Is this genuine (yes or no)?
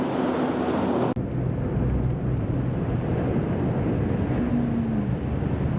yes